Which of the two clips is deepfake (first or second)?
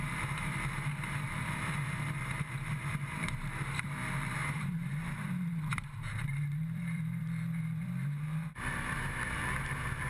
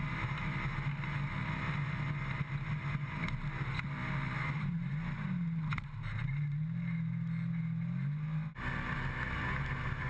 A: first